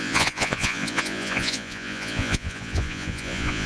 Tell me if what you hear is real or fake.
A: fake